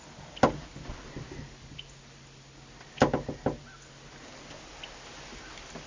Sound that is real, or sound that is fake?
real